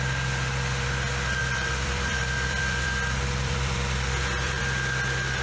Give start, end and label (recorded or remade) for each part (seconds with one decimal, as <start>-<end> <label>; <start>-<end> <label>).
0.0-1.4 recorded; 1.4-4.6 remade; 4.6-5.4 recorded